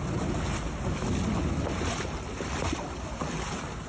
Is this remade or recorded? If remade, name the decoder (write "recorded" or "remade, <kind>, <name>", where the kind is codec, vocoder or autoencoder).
recorded